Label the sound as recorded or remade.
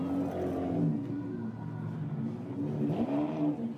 recorded